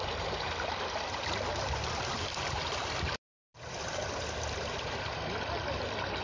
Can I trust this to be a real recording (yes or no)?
no